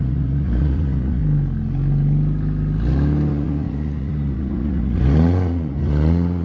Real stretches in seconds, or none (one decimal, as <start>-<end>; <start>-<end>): 1.2-3.3